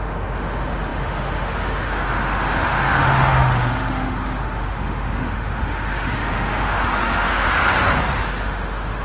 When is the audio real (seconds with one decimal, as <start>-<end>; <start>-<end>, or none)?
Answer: 7.7-8.4